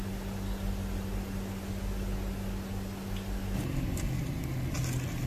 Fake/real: real